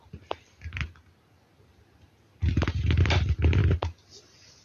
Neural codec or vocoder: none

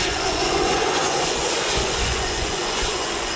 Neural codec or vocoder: vocoder, Vocos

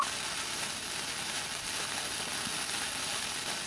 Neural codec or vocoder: none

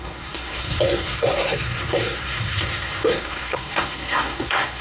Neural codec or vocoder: codec, SNAC